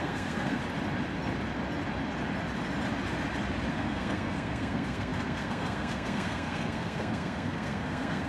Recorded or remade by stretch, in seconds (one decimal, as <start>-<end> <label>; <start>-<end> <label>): 0.0-0.6 remade; 0.6-3.7 recorded; 3.7-8.3 remade